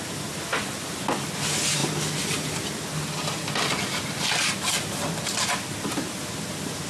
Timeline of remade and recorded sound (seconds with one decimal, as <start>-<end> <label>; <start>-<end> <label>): 0.0-6.9 recorded